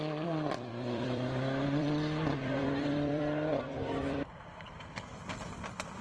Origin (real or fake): fake